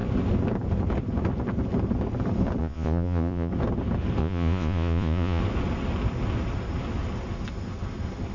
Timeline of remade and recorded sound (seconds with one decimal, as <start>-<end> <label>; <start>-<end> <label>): 0.0-2.6 recorded; 2.6-3.5 remade; 3.5-4.2 recorded; 4.2-5.4 remade; 5.4-8.3 recorded